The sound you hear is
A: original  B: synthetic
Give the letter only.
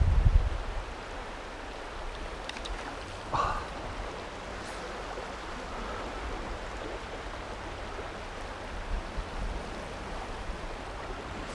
A